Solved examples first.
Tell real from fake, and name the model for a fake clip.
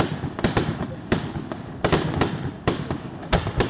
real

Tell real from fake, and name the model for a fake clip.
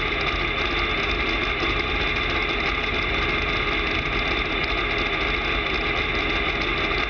real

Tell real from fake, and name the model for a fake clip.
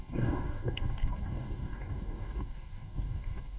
fake, codec, DAC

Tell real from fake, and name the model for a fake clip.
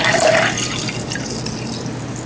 real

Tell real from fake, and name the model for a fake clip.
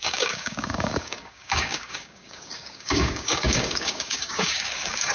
fake, codec, DAC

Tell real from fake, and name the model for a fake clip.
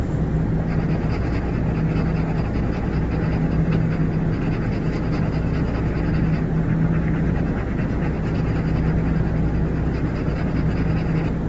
real